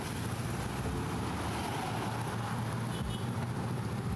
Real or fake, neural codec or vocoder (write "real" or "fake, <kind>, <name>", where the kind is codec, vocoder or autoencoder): real